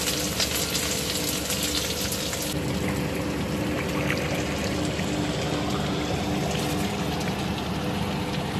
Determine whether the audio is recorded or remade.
recorded